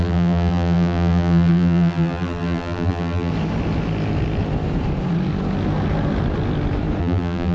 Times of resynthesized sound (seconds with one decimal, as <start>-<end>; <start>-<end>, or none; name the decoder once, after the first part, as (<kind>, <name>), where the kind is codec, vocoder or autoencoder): 0.0-3.3 (vocoder, BigVGAN v2); 7.0-7.5